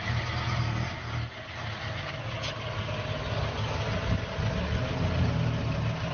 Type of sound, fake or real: real